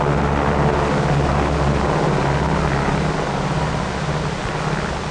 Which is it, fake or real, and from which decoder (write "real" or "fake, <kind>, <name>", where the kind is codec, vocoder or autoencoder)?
real